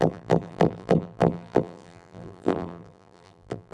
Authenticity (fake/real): fake